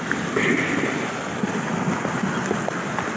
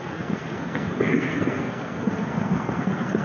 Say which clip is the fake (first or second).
second